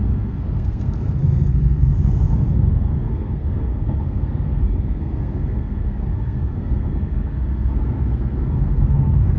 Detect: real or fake fake